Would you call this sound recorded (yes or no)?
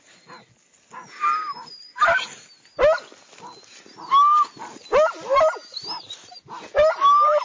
yes